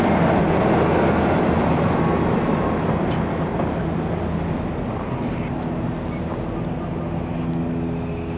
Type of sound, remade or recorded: recorded